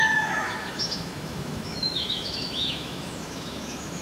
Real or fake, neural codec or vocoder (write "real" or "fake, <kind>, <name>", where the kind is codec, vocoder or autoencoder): fake, autoencoder, DAC-VAE